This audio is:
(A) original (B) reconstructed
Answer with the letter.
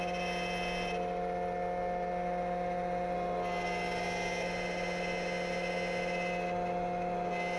A